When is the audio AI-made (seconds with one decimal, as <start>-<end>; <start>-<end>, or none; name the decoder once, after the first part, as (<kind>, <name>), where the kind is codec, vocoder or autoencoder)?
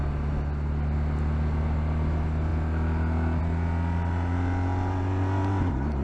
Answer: none